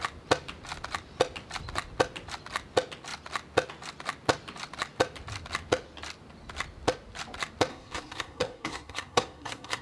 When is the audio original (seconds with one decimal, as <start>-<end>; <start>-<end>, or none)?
0.0-7.7